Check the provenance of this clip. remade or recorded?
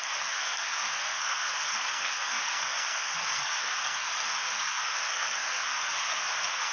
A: remade